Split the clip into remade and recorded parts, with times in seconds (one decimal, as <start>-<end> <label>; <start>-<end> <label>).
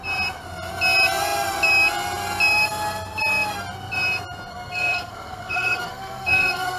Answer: 0.0-4.5 recorded; 4.5-6.8 remade